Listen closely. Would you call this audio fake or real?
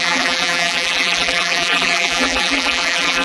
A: fake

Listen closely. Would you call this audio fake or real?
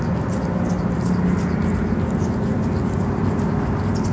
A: real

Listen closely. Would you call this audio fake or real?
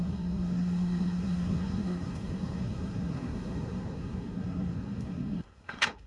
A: fake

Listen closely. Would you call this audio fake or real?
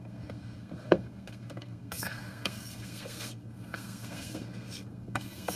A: fake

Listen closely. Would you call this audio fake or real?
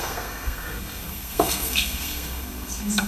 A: fake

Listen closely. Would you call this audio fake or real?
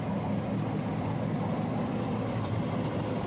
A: real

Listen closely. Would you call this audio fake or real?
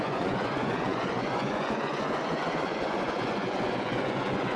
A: fake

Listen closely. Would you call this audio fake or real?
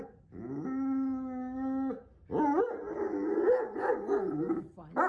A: real